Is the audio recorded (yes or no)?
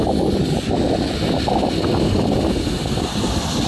yes